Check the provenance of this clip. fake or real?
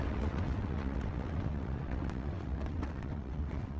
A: fake